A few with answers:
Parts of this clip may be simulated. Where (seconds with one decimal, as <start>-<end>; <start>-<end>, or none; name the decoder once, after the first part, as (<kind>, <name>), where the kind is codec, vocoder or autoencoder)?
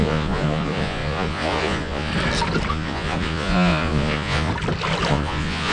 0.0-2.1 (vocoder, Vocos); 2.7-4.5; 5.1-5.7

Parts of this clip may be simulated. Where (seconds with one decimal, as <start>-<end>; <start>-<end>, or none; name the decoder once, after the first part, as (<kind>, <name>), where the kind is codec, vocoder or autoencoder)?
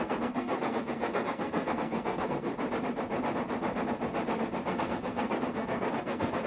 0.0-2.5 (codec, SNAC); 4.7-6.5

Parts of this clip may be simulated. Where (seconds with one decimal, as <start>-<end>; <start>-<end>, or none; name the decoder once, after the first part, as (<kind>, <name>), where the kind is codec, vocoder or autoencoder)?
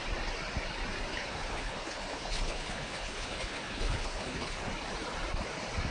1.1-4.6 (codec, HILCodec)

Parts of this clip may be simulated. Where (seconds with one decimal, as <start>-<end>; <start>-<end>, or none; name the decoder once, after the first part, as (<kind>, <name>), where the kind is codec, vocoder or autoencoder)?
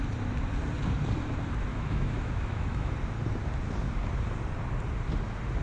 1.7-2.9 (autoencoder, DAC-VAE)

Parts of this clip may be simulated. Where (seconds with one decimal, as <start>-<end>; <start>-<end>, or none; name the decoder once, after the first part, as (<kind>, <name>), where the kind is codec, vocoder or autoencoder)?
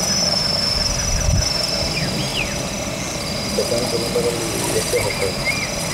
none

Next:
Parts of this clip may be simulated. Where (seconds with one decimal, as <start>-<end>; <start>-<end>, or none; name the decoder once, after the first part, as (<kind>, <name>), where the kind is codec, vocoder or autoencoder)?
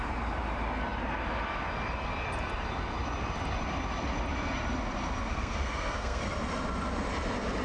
5.3-6.2 (codec, SNAC)